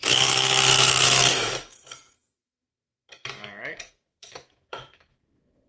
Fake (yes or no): yes